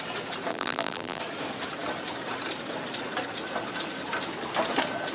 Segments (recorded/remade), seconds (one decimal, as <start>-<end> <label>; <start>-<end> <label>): 0.0-0.5 recorded; 0.5-1.2 remade; 1.2-5.1 recorded